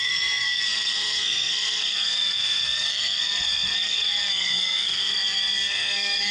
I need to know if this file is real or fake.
fake